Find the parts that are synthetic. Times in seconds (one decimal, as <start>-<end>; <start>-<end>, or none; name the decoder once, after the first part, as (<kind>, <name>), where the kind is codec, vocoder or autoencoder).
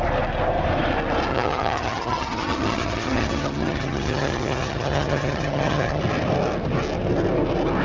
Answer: 1.3-6.0 (vocoder, HiFi-GAN)